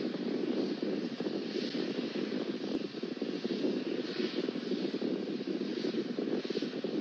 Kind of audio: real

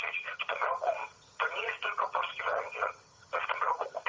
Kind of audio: fake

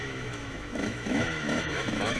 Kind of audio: fake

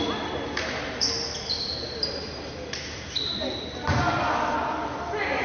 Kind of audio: fake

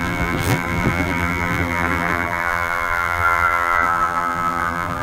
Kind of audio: fake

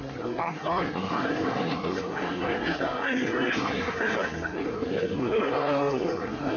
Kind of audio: fake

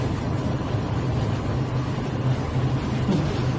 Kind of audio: real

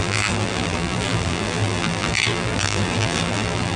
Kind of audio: fake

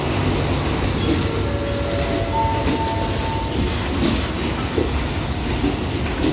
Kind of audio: real